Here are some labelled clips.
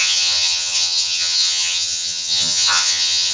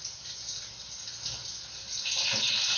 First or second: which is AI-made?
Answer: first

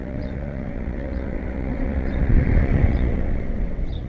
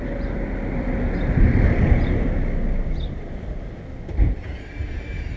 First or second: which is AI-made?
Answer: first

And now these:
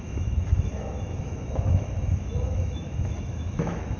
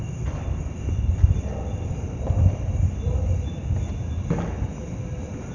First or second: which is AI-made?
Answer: first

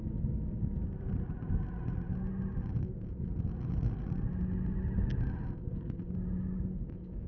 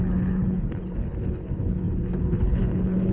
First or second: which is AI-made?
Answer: second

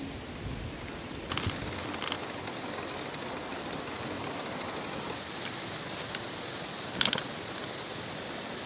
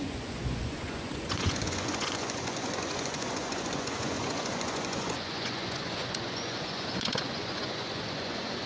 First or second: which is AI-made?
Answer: second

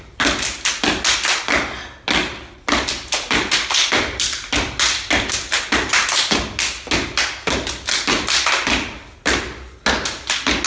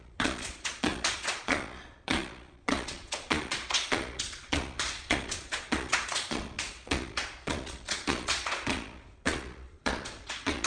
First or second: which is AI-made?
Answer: second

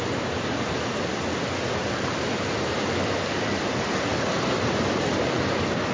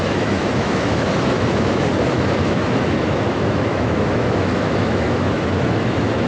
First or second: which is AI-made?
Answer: second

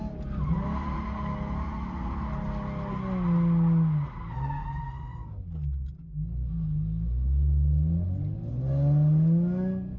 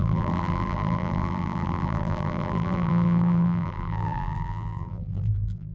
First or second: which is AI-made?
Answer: second